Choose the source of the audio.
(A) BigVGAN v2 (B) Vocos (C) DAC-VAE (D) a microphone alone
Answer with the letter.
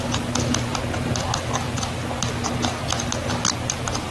A